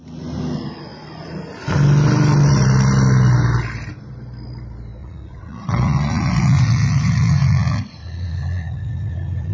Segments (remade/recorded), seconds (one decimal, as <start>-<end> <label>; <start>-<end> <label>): 0.0-5.0 recorded; 5.0-9.5 remade